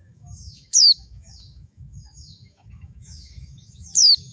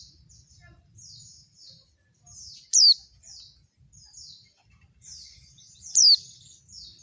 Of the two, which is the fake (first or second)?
first